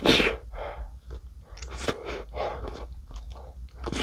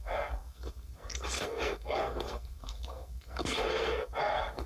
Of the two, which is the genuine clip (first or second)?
first